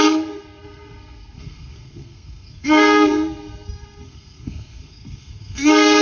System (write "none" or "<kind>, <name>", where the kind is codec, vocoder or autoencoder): codec, SNAC